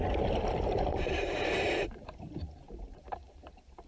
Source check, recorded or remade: remade